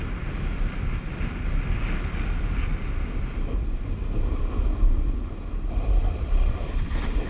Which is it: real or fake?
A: real